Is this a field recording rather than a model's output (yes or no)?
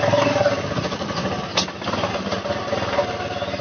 yes